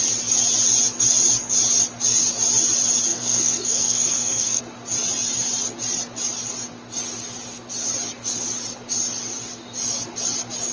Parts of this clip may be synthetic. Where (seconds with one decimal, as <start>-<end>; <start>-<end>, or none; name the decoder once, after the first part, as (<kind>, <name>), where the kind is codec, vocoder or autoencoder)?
3.1-4.6 (codec, SNAC)